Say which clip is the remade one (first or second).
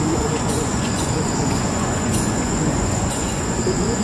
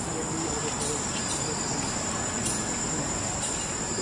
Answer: first